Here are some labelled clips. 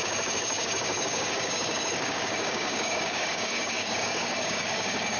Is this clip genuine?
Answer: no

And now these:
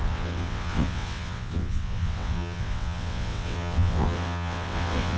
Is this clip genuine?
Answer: no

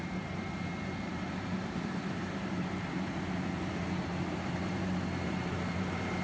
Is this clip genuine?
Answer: no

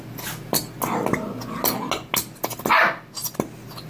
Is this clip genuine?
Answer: yes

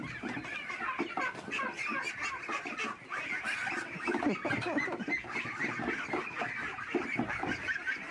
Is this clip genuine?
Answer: yes